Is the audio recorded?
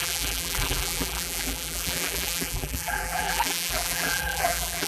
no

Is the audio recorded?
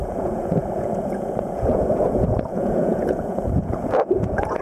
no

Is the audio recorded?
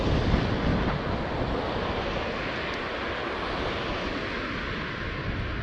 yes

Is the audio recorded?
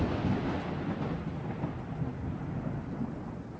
yes